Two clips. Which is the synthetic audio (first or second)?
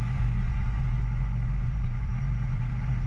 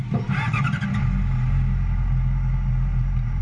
first